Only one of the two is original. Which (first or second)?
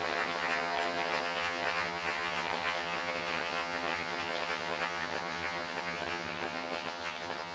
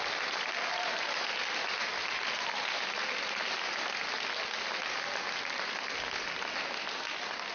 second